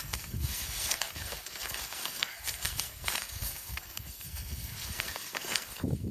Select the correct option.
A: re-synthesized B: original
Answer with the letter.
A